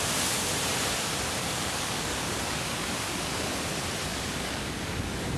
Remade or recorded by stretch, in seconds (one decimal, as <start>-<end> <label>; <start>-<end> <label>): 0.0-1.4 recorded; 1.4-3.5 remade; 3.5-4.1 recorded; 4.1-5.0 remade; 5.0-5.4 recorded